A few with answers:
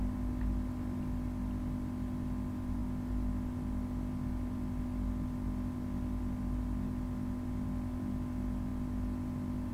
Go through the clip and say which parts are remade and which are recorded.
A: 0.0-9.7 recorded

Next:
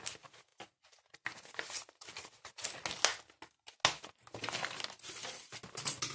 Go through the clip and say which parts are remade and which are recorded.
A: 0.0-0.5 recorded; 0.5-2.5 remade; 2.5-6.1 recorded